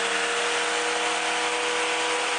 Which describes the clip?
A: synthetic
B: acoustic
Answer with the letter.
B